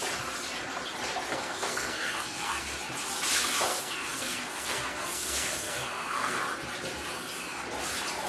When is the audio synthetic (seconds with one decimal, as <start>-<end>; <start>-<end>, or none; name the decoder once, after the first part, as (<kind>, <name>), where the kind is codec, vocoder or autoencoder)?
1.3-2.7 (codec, SNAC); 3.7-6.4